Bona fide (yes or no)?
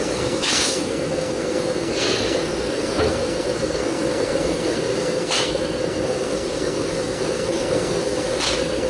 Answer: no